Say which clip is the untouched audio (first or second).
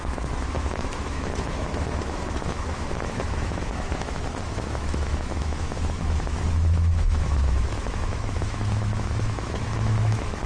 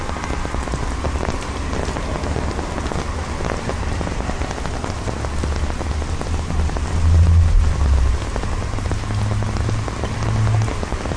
second